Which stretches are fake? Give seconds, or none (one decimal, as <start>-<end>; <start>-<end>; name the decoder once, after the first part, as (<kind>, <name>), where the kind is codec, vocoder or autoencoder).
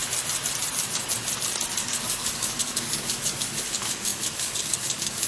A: 1.8-5.3 (codec, DAC)